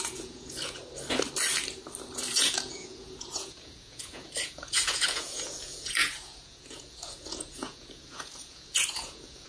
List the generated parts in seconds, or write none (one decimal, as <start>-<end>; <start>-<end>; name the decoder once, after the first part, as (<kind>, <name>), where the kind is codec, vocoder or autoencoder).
0.0-0.8 (vocoder, Vocos); 2.3-9.5